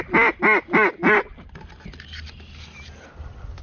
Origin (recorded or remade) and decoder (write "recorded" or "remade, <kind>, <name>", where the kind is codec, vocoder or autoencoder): recorded